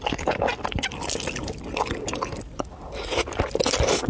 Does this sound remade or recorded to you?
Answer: recorded